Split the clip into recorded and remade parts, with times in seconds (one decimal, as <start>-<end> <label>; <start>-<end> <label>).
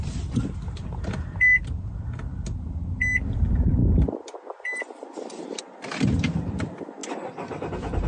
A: 0.0-8.1 recorded